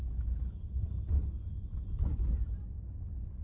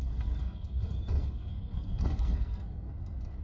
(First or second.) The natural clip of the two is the first